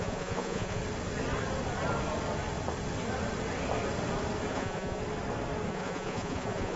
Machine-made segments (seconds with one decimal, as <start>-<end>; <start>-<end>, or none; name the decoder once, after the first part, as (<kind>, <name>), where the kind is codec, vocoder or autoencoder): 0.0-0.8 (vocoder, Vocos); 4.5-5.0; 5.7-6.8